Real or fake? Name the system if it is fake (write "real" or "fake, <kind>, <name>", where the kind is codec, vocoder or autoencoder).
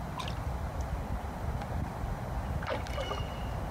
real